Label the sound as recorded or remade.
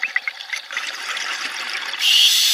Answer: remade